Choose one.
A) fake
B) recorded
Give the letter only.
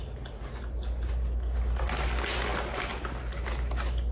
B